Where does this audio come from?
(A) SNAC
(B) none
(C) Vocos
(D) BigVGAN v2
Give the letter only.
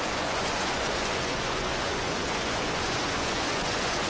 C